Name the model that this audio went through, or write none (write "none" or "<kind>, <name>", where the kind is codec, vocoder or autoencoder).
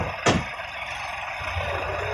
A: none